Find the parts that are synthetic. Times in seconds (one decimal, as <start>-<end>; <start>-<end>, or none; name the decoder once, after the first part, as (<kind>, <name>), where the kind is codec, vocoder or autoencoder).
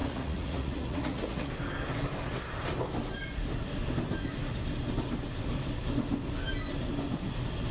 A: 0.0-1.5 (vocoder, Vocos)